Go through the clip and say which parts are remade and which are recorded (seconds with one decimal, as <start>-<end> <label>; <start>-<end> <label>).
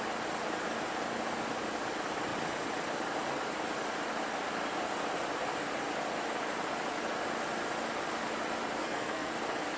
0.0-8.8 recorded; 8.8-9.3 remade; 9.3-9.8 recorded